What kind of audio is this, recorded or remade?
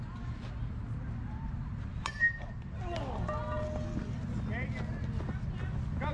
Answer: recorded